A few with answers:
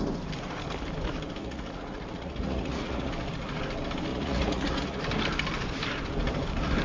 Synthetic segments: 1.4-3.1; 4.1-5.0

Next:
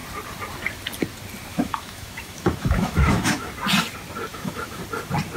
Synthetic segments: 1.5-3.5; 4.3-4.8

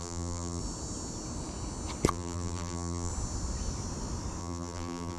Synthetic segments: 0.0-0.6; 2.1-3.1; 4.4-5.2

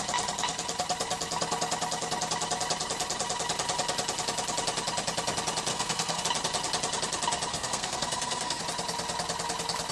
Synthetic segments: 5.7-6.2; 7.5-8.6

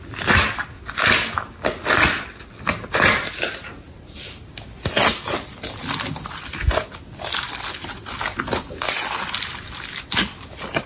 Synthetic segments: none

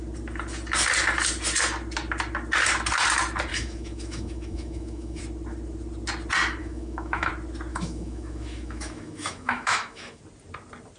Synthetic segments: 3.5-5.2; 6.6-7.3; 7.7-10.2

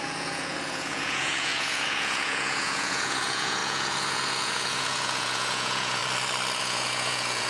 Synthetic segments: 0.0-6.0; 6.6-7.5